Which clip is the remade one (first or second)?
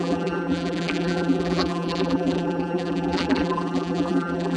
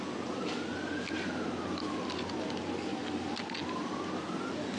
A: first